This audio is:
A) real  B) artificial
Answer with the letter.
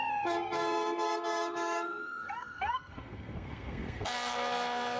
B